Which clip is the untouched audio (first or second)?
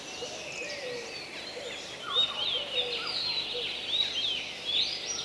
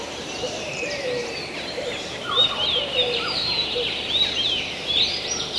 first